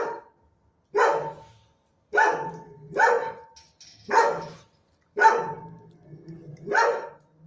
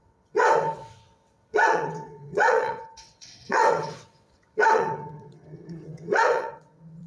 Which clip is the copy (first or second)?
second